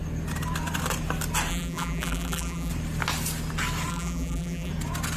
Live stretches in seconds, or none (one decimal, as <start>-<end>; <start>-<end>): 0.0-1.5; 2.7-3.9; 4.7-5.2